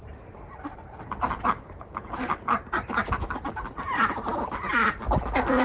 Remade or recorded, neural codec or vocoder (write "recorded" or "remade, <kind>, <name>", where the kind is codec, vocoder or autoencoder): recorded